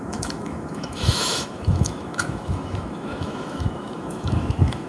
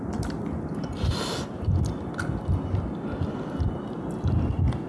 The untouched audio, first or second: second